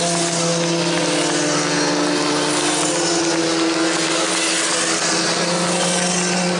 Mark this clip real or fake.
real